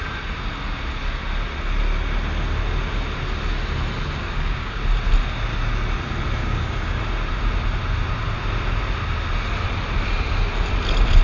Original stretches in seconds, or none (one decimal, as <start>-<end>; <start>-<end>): 0.0-4.2; 4.8-6.4; 7.0-11.2